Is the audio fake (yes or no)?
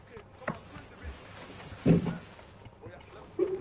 no